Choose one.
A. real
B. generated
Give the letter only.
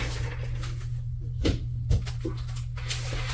A